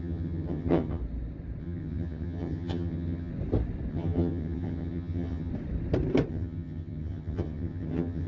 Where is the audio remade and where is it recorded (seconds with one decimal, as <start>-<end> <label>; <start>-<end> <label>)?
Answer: 0.0-1.0 remade; 1.0-1.6 recorded; 1.6-3.3 remade; 3.3-3.9 recorded; 3.9-5.5 remade; 5.5-6.3 recorded; 6.3-8.3 remade